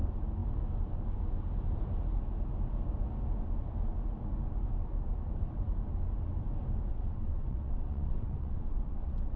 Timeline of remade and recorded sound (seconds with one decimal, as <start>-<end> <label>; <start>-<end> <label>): 0.0-6.9 recorded; 6.9-9.4 remade